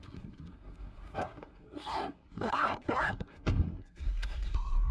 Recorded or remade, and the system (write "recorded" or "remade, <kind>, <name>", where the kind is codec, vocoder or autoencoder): remade, codec, SNAC